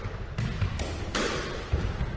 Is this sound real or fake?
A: real